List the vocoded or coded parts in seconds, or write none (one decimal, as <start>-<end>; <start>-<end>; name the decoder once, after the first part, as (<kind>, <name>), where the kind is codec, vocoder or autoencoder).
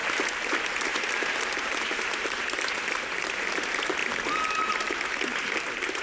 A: 0.0-4.0 (vocoder, BigVGAN v2); 4.6-6.0